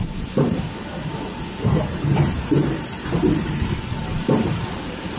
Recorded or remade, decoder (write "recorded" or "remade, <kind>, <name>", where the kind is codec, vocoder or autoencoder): remade, vocoder, BigVGAN v2